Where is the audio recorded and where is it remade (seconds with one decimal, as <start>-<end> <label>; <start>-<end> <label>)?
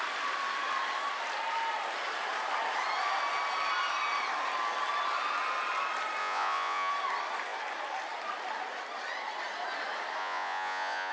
0.0-6.2 recorded; 6.2-6.9 remade; 6.9-10.2 recorded; 10.2-11.1 remade